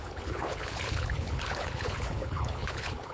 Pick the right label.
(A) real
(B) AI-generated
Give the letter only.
B